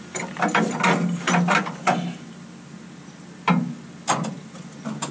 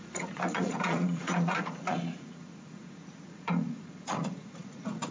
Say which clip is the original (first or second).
first